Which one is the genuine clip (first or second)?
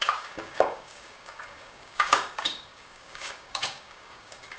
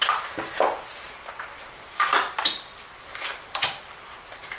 second